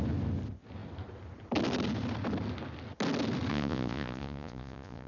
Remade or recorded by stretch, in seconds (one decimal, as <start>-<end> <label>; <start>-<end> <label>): 0.0-3.5 recorded; 3.5-5.1 remade